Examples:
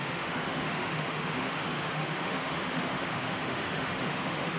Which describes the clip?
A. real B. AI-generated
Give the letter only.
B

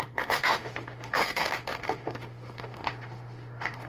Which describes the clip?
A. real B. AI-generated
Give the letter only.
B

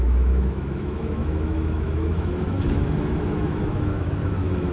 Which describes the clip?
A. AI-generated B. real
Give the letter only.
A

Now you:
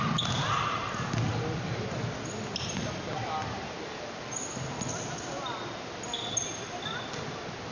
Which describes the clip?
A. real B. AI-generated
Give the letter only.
A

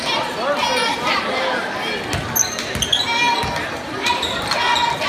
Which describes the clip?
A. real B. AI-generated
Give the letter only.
A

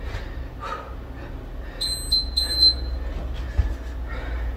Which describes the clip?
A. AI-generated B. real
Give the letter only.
B